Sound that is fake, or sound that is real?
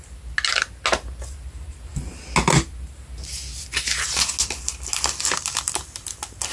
real